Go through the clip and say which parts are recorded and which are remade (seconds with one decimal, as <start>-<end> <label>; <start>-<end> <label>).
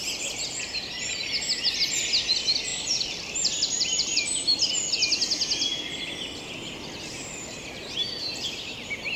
0.0-1.2 remade; 1.2-2.7 recorded; 2.7-4.7 remade; 4.7-9.2 recorded